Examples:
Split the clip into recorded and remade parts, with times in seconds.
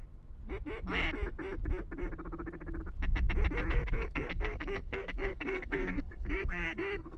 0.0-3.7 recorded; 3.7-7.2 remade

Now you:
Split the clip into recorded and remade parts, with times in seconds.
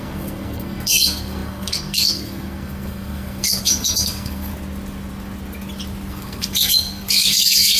0.0-4.5 remade; 4.5-6.1 recorded; 6.1-7.8 remade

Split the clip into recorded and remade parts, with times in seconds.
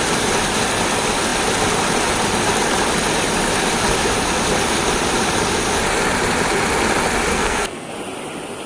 0.0-7.3 recorded; 7.3-7.9 remade; 7.9-8.7 recorded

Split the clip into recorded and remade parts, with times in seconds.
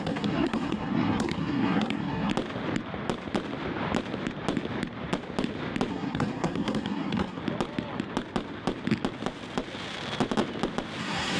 0.0-2.3 remade; 2.3-5.9 recorded; 5.9-7.4 remade; 7.4-11.0 recorded; 11.0-11.4 remade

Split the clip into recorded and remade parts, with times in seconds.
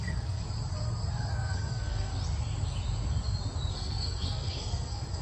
0.0-0.4 remade; 0.4-1.3 recorded; 1.3-2.1 remade; 2.1-3.7 recorded; 3.7-5.2 remade